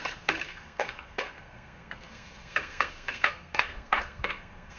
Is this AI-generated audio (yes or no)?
yes